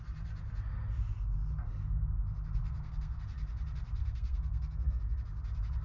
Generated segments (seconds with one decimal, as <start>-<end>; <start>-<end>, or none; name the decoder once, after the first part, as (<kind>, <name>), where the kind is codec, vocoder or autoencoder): 2.6-3.2 (codec, SNAC); 4.0-5.0